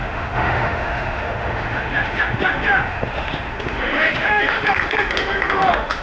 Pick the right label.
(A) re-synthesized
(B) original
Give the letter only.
A